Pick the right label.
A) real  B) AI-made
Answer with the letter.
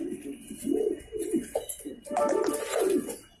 A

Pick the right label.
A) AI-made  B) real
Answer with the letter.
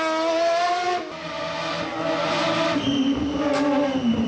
B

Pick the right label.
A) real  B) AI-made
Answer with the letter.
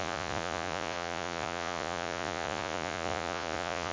B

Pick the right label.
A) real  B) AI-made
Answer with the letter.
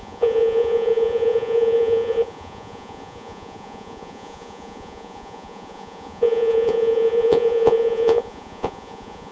B